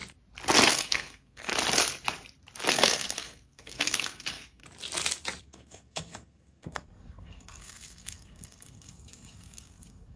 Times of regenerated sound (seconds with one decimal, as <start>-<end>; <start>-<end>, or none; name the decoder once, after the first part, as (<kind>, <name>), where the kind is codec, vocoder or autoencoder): 0.7-1.5 (codec, SNAC); 2.7-4.6; 5.4-10.2